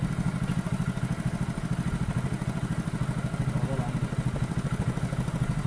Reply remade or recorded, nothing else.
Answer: recorded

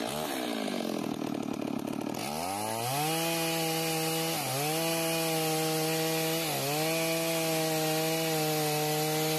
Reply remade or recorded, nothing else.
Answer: recorded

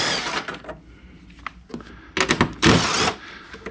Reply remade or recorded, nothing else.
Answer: recorded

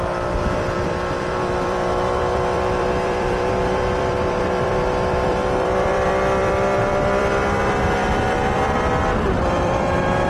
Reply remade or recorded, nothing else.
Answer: remade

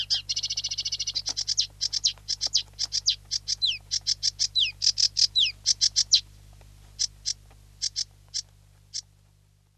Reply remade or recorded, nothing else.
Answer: recorded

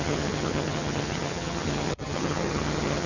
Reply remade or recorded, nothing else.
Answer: remade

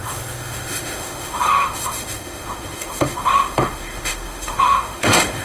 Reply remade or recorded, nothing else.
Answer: remade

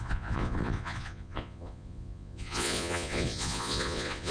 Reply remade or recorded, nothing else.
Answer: remade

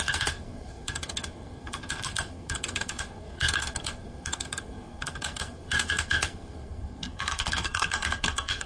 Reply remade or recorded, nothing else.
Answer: remade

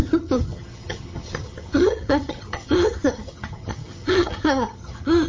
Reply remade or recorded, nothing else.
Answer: remade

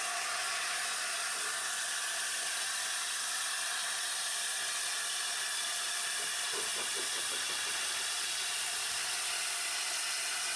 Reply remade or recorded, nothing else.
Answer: recorded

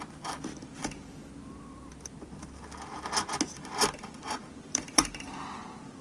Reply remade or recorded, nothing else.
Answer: recorded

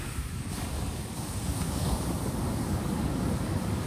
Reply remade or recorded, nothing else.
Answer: remade